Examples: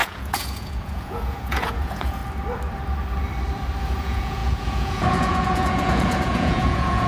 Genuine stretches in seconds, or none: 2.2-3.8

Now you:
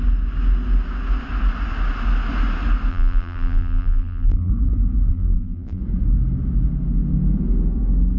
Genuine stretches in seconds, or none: 0.0-2.9; 4.5-5.1; 5.8-8.2